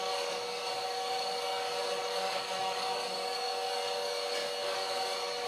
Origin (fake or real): fake